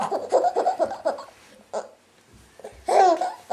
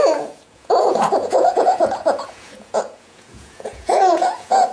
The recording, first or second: first